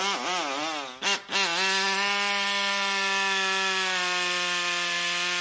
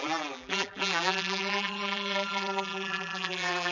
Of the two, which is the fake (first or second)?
second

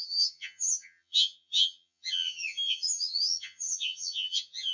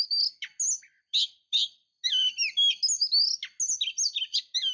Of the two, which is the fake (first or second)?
first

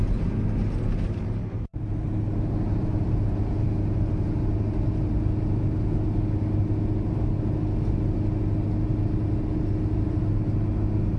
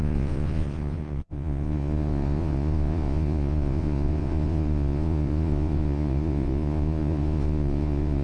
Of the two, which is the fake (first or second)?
second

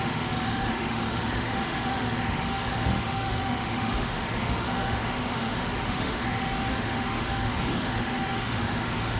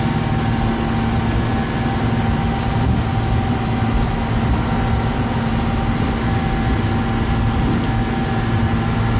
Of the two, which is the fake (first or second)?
first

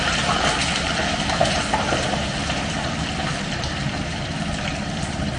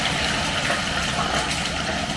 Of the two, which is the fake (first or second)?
first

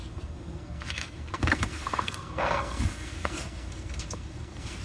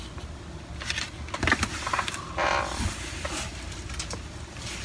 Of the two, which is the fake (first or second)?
first